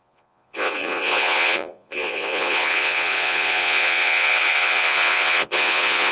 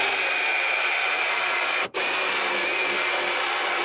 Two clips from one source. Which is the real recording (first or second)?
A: second